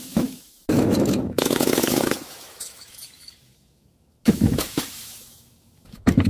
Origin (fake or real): fake